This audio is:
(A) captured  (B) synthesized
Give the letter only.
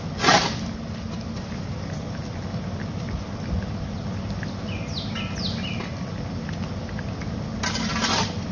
A